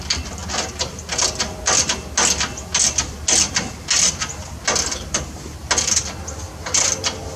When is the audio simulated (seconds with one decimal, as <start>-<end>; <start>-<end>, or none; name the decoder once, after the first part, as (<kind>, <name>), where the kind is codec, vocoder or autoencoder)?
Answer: none